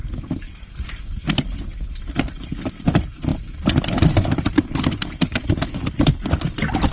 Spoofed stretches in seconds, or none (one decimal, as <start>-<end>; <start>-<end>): none